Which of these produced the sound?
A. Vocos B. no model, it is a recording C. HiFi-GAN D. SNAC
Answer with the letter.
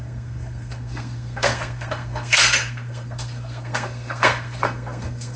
D